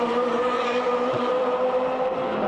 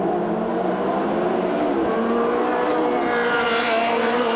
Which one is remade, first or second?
first